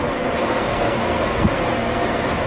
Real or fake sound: fake